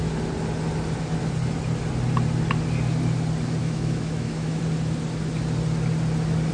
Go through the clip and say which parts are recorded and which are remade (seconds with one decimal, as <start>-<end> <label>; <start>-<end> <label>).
0.0-3.6 recorded; 3.6-4.6 remade; 4.6-6.5 recorded